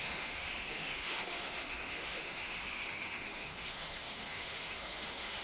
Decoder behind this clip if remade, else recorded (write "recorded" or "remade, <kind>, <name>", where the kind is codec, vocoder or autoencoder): remade, autoencoder, DAC-VAE